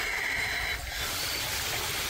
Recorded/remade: recorded